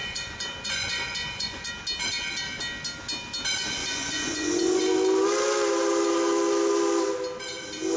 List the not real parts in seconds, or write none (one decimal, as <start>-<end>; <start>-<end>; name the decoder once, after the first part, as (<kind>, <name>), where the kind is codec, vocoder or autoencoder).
0.0-1.7 (vocoder, Vocos); 3.8-4.8